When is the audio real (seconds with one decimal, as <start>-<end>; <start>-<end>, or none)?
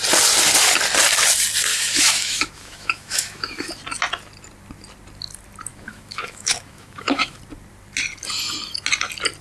0.0-1.7; 3.7-5.7; 7.4-9.4